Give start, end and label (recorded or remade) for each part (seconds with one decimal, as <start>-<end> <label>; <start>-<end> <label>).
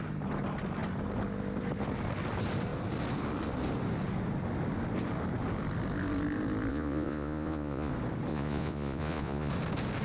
0.0-6.7 recorded; 6.7-7.9 remade; 7.9-8.3 recorded; 8.3-9.5 remade; 9.5-10.0 recorded